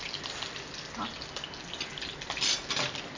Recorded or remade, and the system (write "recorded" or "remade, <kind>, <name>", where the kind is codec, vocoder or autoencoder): recorded